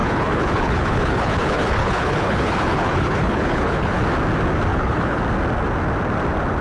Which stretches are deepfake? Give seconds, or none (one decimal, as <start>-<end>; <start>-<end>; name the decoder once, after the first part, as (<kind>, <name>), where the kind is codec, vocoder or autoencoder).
0.0-4.0 (codec, HILCodec); 4.7-5.2